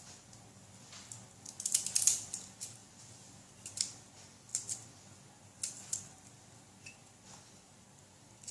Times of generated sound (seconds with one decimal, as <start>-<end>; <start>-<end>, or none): none